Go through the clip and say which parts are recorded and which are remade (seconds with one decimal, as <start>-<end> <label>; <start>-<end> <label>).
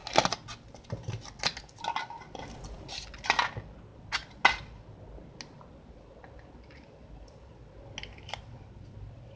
0.0-9.4 recorded